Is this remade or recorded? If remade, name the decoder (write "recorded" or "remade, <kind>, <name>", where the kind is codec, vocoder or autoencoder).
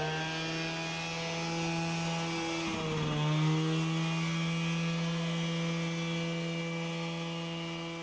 recorded